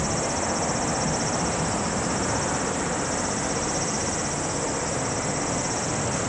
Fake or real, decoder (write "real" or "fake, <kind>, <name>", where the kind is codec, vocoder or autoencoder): real